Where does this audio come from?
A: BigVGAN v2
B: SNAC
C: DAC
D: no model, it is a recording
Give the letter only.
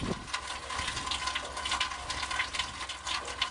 D